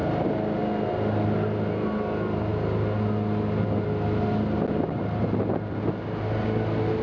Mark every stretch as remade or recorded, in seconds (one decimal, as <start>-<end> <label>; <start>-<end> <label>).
0.0-7.0 recorded

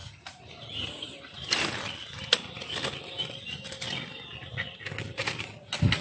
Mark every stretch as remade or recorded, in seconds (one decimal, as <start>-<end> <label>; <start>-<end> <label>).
0.0-1.6 remade; 1.6-6.0 recorded

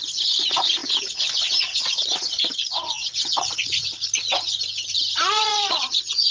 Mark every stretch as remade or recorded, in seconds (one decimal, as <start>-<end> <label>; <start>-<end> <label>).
0.0-6.3 remade

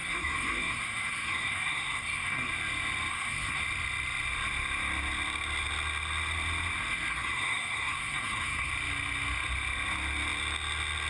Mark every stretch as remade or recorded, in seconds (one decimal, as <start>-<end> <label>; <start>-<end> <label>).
0.0-2.5 remade; 2.5-3.1 recorded; 3.1-3.6 remade; 3.6-7.1 recorded; 7.1-8.7 remade; 8.7-11.1 recorded

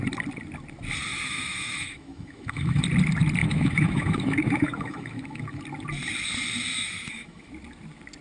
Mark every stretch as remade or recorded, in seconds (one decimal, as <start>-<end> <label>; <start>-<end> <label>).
0.0-1.1 recorded; 1.1-2.8 remade; 2.8-3.4 recorded; 3.4-5.6 remade; 5.6-6.7 recorded; 6.7-7.5 remade; 7.5-8.2 recorded

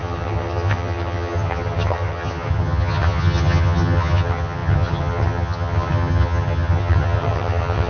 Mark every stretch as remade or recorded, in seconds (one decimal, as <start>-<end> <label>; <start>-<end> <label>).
0.0-7.9 remade

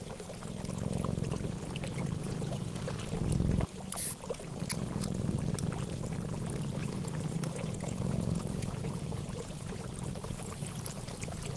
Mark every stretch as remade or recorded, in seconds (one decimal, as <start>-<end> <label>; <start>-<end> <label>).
0.0-2.2 recorded; 2.2-2.8 remade; 2.8-6.8 recorded; 6.8-9.9 remade; 9.9-11.6 recorded

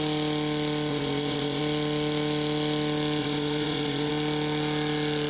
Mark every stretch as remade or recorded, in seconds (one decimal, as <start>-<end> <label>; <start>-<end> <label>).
0.0-0.9 recorded; 0.9-1.6 remade; 1.6-3.2 recorded; 3.2-4.1 remade; 4.1-5.3 recorded